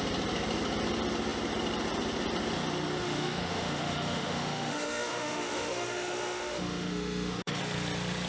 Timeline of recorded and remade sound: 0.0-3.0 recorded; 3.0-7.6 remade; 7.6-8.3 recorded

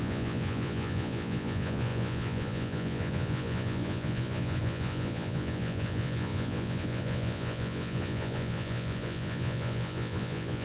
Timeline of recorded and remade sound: 0.0-10.6 remade

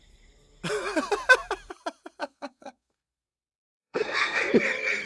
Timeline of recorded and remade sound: 0.0-2.2 recorded; 2.2-4.5 remade; 4.5-5.1 recorded

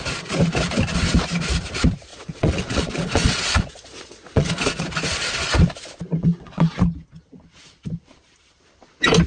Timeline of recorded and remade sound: 0.0-2.1 recorded; 2.1-4.8 remade; 4.8-6.2 recorded; 6.2-6.8 remade; 6.8-9.3 recorded